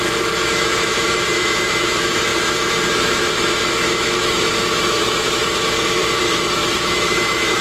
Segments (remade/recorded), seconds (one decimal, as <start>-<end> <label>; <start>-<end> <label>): 0.0-7.6 remade